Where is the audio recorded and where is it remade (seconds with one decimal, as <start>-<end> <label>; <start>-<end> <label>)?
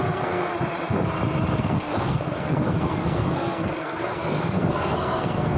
0.0-0.5 remade; 0.5-1.6 recorded; 1.6-5.6 remade